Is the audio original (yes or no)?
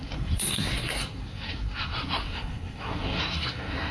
no